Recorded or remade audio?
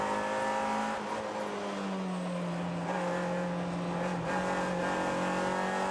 recorded